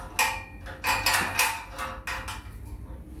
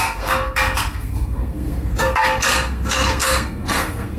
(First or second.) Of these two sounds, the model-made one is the second